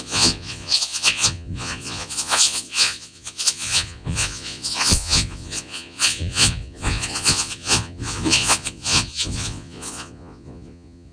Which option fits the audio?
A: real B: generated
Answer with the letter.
B